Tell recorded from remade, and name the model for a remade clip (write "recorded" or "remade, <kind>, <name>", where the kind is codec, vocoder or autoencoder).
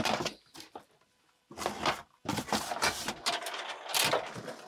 recorded